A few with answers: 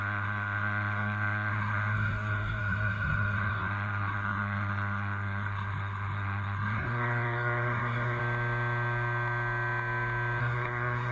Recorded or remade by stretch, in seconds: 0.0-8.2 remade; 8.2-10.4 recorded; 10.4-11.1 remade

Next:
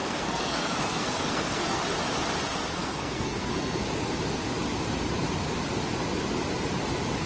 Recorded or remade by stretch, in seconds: 0.0-1.8 remade; 1.8-2.8 recorded; 2.8-3.8 remade; 3.8-7.3 recorded

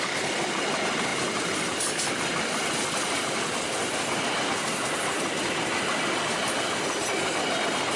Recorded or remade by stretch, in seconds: 0.0-8.0 recorded

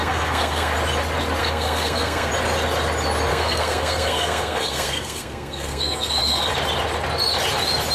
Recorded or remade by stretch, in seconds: 0.0-0.7 remade; 0.7-1.4 recorded; 1.4-2.3 remade; 2.3-3.3 recorded; 3.3-6.5 remade; 6.5-7.9 recorded

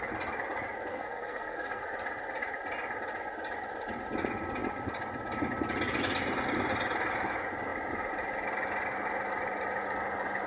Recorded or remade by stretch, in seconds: 0.0-0.9 recorded; 0.9-1.8 remade; 1.8-10.5 recorded

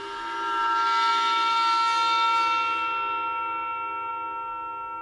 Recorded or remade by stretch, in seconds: 0.0-5.0 recorded

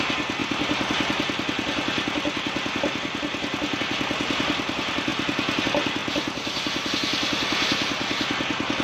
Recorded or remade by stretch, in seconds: 0.0-8.8 recorded